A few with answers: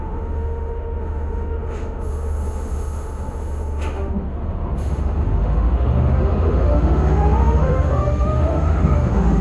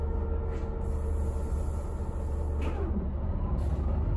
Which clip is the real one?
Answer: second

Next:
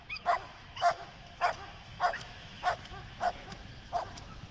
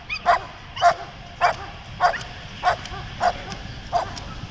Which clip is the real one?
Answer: second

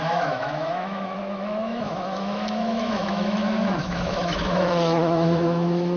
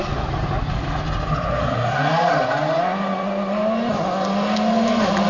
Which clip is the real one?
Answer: second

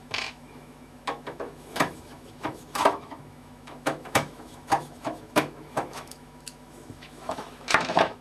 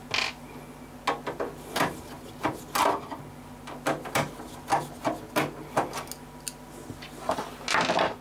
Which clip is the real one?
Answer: second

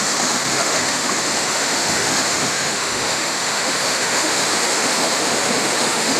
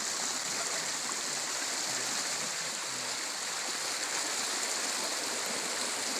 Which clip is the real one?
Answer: second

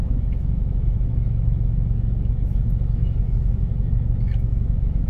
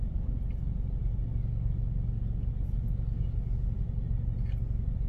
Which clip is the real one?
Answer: second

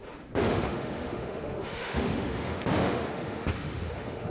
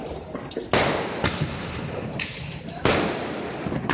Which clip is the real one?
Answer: second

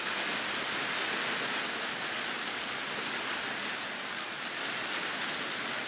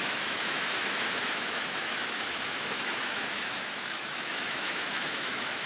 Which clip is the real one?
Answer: first